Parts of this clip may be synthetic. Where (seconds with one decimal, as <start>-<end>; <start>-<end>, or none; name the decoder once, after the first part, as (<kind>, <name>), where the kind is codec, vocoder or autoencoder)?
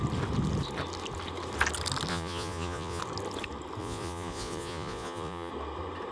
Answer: 2.1-3.0 (vocoder, Vocos); 3.8-5.5